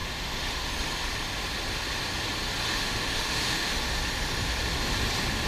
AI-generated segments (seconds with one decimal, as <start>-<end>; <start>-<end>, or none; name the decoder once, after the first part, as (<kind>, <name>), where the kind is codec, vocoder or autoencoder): 0.0-0.7 (autoencoder, DAC-VAE); 2.7-3.9